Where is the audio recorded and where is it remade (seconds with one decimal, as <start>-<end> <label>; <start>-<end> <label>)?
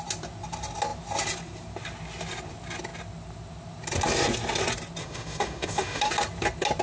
0.0-5.0 recorded; 5.0-6.1 remade; 6.1-6.8 recorded